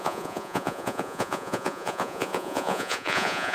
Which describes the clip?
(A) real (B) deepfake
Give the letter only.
B